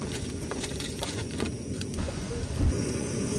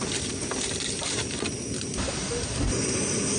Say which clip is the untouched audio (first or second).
second